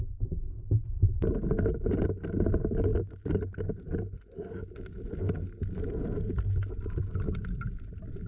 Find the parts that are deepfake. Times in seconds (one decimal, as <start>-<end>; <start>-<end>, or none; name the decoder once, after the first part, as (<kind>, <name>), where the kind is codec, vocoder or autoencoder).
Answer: none

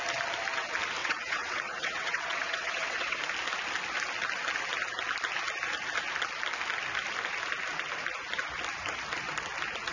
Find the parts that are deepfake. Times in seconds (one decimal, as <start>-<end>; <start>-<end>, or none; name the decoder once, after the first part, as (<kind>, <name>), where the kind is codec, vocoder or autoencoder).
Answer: 1.0-3.2 (vocoder, WaveNeXt)